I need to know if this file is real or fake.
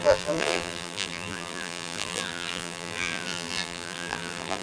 fake